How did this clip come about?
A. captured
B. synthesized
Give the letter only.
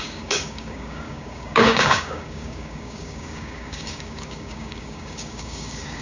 B